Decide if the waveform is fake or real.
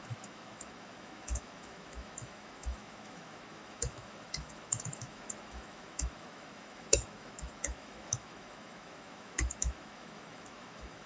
fake